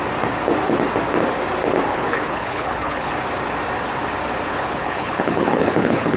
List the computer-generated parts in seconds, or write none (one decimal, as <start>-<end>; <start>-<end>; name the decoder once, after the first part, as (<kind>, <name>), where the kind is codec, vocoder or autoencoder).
1.9-3.1 (codec, HILCodec); 4.5-6.2